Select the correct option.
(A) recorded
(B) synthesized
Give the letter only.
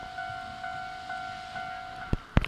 A